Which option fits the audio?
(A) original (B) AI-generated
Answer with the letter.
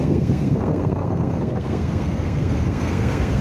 B